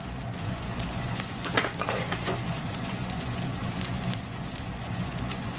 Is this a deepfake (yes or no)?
yes